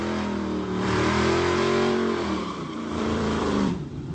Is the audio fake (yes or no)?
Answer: yes